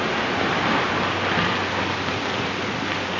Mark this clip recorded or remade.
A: recorded